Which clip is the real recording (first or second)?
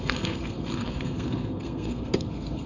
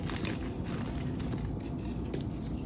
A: second